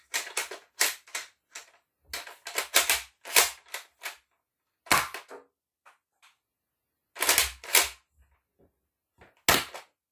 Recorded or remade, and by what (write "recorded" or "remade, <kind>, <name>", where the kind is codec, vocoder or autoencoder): recorded